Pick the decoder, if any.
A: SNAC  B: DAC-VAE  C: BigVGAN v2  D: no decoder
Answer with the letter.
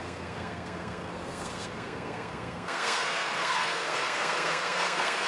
A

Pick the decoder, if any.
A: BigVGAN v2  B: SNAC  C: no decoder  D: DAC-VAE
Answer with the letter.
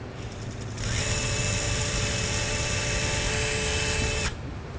C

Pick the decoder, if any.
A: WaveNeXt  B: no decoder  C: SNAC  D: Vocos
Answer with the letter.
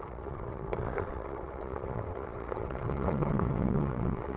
A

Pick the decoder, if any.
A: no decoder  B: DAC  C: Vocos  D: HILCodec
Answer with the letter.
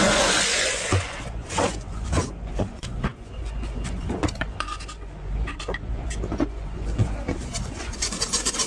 C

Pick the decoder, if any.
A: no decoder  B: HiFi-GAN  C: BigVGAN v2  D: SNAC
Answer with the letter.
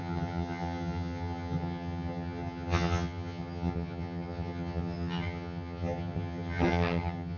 B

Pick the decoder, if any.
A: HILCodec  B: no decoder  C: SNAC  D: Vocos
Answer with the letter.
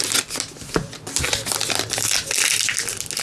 B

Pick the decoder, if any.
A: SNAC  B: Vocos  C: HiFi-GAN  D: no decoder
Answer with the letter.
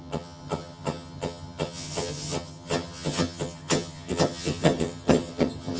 C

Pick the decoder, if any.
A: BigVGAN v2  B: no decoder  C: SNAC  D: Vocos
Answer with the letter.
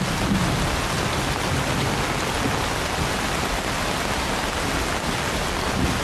B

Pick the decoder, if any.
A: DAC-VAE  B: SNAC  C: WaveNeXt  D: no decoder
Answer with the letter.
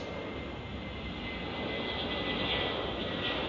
D